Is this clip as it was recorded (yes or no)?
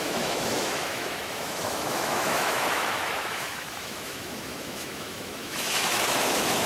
no